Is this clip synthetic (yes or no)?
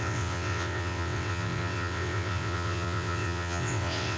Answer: yes